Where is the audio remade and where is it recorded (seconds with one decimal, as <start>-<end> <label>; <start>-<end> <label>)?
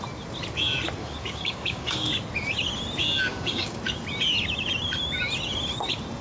0.0-1.0 recorded; 1.0-2.1 remade; 2.1-3.3 recorded; 3.3-3.8 remade; 3.8-6.2 recorded